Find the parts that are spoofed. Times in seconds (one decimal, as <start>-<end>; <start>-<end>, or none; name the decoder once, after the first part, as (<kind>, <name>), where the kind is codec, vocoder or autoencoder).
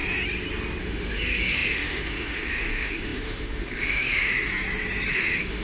0.8-4.5 (autoencoder, DAC-VAE); 5.1-5.6